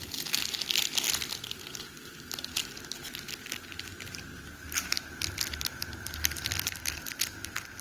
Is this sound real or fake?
real